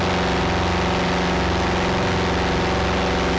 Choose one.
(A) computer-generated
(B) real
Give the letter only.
B